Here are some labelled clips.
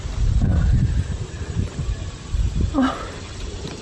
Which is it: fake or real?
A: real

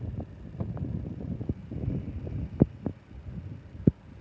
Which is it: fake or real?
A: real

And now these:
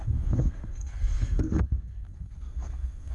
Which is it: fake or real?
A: fake